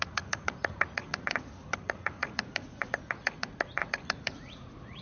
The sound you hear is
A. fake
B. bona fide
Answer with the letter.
A